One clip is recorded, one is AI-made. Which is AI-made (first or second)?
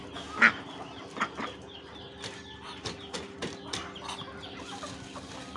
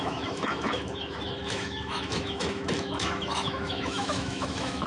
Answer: second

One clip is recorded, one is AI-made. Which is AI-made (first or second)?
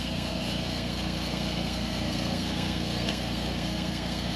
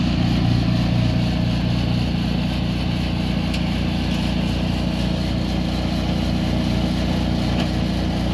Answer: first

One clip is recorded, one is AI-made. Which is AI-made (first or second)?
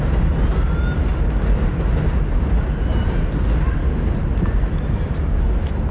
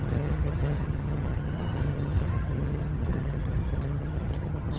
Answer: second